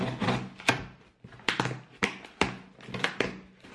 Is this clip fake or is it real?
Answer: real